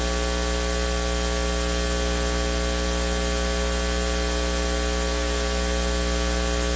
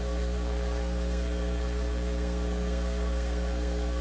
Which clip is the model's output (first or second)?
second